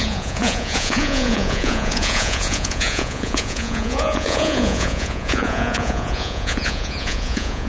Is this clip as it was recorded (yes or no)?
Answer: no